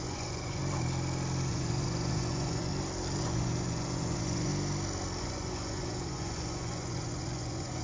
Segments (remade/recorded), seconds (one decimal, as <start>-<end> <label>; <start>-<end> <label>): 0.0-0.6 remade; 0.6-1.5 recorded; 1.5-2.7 remade; 2.7-3.2 recorded; 3.2-4.5 remade; 4.5-5.2 recorded; 5.2-7.8 remade